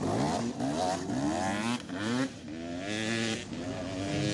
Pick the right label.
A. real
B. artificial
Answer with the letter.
A